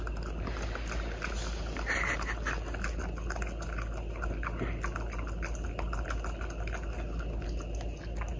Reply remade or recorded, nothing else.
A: recorded